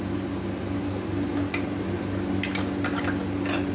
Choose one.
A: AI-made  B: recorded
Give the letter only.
B